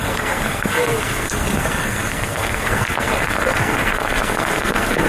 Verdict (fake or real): fake